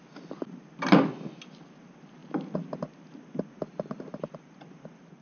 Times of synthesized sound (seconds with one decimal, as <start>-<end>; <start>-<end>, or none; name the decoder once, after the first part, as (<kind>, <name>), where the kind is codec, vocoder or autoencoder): none